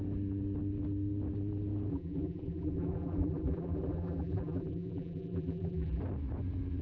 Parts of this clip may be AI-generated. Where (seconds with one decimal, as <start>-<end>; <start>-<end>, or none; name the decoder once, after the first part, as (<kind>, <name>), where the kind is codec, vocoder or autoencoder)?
1.9-6.0 (vocoder, BigVGAN v2)